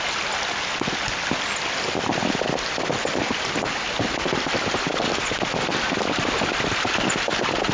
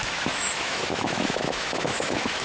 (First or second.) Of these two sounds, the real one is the first